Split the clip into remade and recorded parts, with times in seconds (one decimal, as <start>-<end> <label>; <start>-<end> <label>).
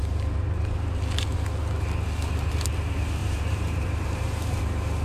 0.0-1.0 remade; 1.0-3.2 recorded; 3.2-4.6 remade; 4.6-5.0 recorded